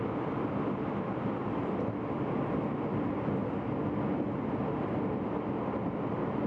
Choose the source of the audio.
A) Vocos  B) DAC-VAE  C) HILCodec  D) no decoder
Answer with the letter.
D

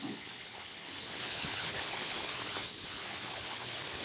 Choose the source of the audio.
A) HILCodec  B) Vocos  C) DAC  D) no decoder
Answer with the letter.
A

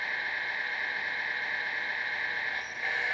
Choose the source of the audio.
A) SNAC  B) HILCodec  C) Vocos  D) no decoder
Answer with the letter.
D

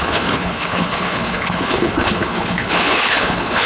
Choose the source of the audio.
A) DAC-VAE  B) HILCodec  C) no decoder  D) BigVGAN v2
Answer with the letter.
B